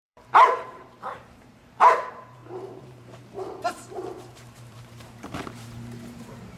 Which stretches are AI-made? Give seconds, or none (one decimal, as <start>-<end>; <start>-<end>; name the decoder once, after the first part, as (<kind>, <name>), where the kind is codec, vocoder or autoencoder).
0.0-6.6 (vocoder, BigVGAN v2)